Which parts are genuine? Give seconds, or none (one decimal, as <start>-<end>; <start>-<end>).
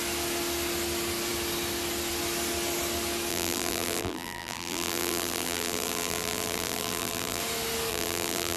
0.0-3.3; 7.4-7.9